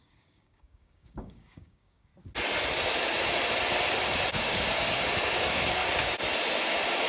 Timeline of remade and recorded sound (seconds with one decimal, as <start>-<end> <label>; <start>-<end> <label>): 0.0-2.1 remade; 2.1-4.3 recorded; 4.3-5.8 remade; 5.8-7.1 recorded

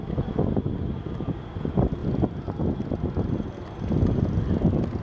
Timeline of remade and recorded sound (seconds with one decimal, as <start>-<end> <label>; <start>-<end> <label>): 0.0-5.0 recorded

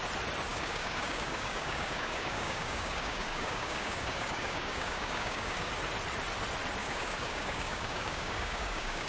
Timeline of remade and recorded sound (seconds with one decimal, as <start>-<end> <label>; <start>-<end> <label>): 0.0-0.5 recorded; 0.5-5.7 remade; 5.7-6.8 recorded; 6.8-9.1 remade

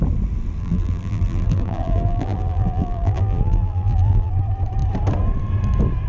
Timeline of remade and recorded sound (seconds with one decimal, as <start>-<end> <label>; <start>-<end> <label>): 0.0-0.6 recorded; 0.6-4.3 remade; 4.3-6.1 recorded

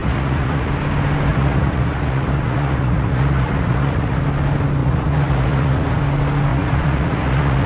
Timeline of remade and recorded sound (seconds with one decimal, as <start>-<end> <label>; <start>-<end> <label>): 0.0-0.7 remade; 0.7-1.3 recorded; 1.3-4.2 remade; 4.2-4.8 recorded; 4.8-6.0 remade; 6.0-6.5 recorded; 6.5-7.7 remade

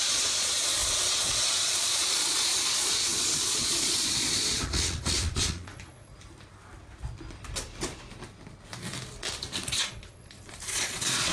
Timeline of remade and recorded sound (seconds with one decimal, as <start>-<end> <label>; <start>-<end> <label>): 0.0-6.1 remade; 6.1-9.9 recorded; 9.9-11.3 remade